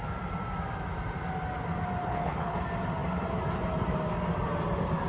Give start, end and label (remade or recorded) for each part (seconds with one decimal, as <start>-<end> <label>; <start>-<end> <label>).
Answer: 0.0-2.0 recorded; 2.0-2.6 remade; 2.6-5.1 recorded